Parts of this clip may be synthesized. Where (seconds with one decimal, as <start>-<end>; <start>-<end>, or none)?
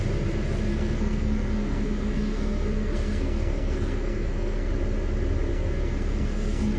0.7-4.7; 5.5-6.8